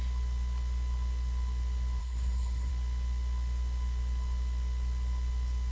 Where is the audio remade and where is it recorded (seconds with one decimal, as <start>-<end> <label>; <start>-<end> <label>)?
0.0-2.0 recorded; 2.0-2.7 remade; 2.7-5.7 recorded